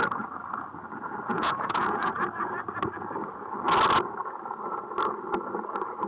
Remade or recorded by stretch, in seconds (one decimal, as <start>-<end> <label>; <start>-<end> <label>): 0.0-1.3 recorded; 1.3-2.1 remade; 2.1-6.1 recorded